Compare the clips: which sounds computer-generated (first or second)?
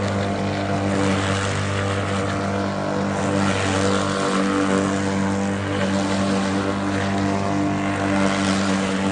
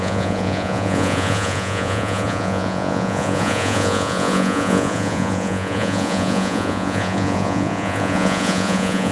second